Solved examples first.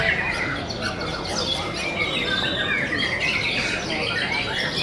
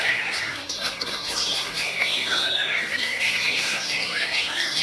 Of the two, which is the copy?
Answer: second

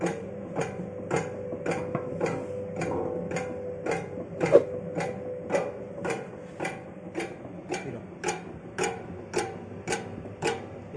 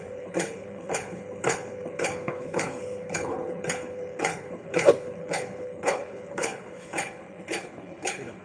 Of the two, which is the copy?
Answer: second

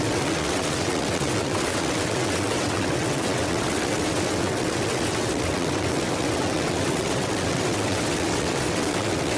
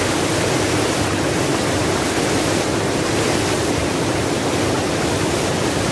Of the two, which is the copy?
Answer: first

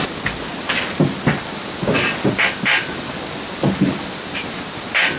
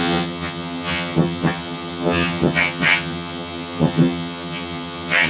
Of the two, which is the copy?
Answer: second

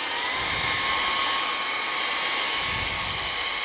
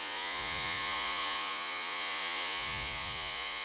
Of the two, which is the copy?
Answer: second